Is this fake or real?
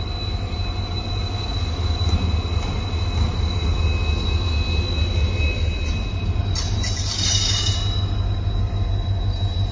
real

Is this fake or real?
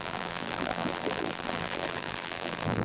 fake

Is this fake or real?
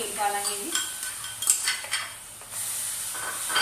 real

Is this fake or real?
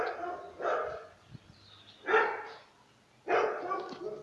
real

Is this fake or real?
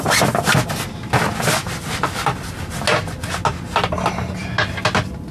real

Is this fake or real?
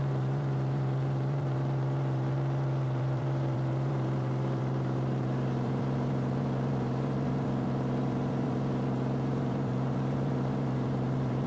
fake